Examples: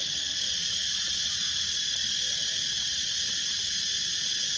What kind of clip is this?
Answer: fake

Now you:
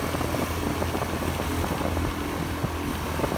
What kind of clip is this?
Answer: real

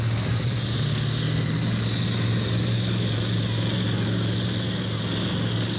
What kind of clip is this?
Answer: real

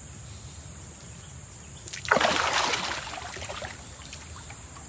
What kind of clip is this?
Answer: real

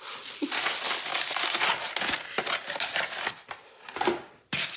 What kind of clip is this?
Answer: real